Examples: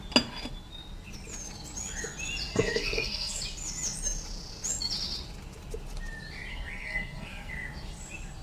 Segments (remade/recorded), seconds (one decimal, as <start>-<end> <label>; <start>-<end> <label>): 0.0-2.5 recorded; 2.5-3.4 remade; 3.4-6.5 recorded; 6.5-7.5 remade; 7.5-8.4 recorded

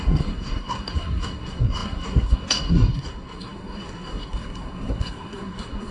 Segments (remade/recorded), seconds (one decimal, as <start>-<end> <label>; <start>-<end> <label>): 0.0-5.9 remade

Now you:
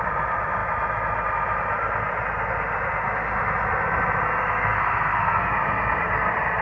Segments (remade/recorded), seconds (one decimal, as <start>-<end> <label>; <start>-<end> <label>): 0.0-4.4 recorded; 4.4-5.4 remade; 5.4-6.6 recorded